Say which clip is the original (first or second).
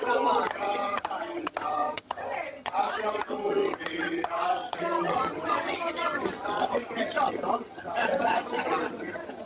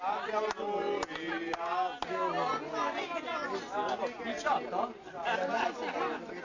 second